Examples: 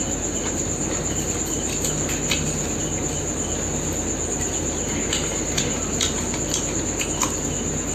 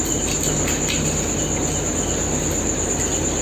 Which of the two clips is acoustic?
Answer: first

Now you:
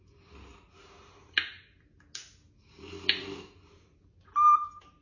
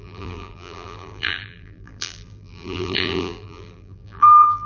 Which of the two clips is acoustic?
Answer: first